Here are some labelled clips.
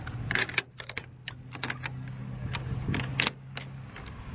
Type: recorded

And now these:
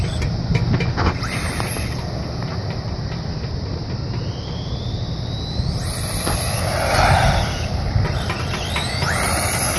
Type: recorded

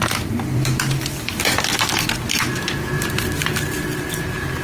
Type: remade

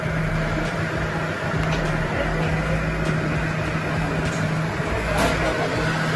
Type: recorded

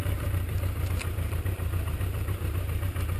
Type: remade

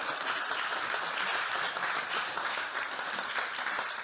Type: recorded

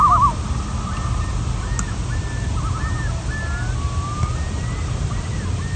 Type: recorded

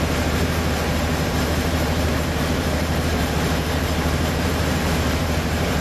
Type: remade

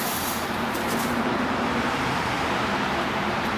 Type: remade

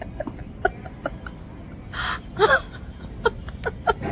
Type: recorded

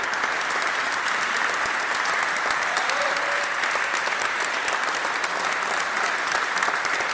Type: remade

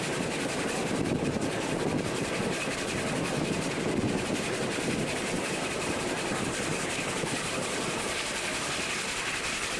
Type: remade